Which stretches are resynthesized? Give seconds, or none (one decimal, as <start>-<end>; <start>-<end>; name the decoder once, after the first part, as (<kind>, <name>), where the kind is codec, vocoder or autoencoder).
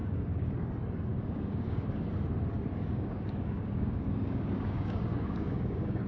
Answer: 0.0-0.5 (codec, DAC); 1.1-2.1; 2.7-6.1